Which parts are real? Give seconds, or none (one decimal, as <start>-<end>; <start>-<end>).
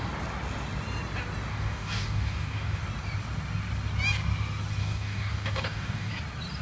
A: 0.0-1.5; 2.8-4.8; 6.1-6.6